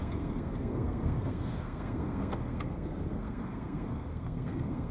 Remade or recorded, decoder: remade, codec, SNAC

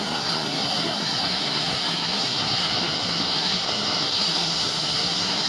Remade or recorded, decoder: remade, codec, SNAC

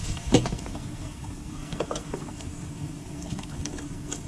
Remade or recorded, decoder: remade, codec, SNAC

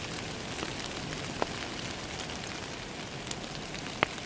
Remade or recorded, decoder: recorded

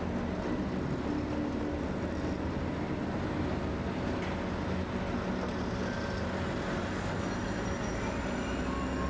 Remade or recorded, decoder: recorded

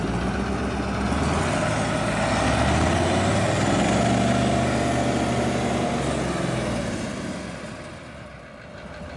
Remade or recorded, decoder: recorded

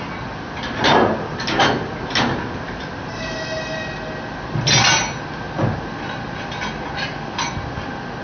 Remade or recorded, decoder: recorded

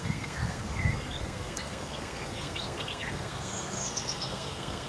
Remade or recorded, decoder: remade, codec, SNAC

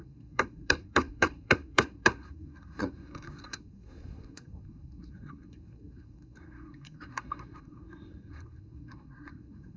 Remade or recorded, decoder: remade, codec, SNAC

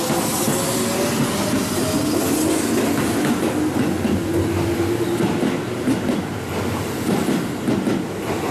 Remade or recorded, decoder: recorded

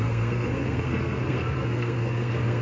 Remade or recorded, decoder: remade, codec, SNAC